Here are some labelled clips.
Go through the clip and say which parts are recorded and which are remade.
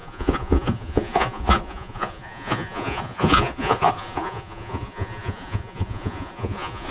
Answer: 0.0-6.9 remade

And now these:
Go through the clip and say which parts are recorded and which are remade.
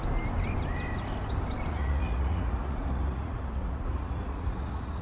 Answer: 0.0-1.7 recorded; 1.7-5.0 remade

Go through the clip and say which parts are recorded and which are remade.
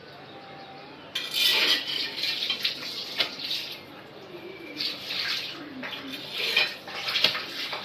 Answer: 0.0-1.5 recorded; 1.5-6.2 remade; 6.2-7.8 recorded